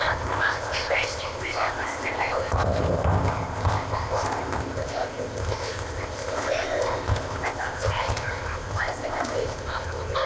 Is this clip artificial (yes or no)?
yes